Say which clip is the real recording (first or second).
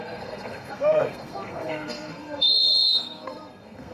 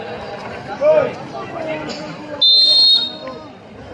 second